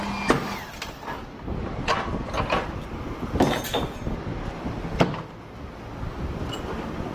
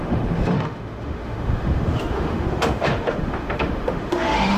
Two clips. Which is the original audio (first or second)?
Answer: first